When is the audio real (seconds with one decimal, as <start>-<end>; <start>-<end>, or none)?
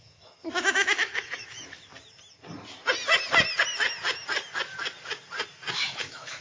1.9-5.7